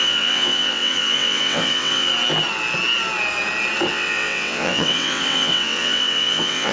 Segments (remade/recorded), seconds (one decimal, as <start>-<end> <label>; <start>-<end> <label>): 0.0-2.1 remade; 2.1-3.9 recorded; 3.9-6.7 remade